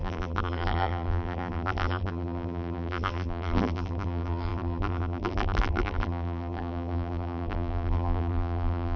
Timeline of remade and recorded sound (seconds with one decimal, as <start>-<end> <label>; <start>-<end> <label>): 0.0-9.0 remade